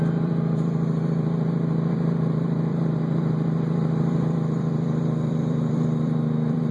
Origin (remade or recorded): remade